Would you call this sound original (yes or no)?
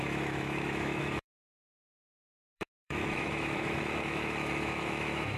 no